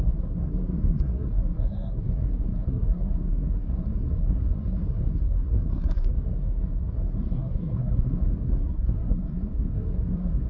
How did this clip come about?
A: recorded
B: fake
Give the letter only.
B